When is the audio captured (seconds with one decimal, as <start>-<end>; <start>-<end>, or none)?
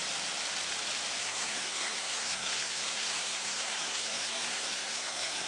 0.0-1.2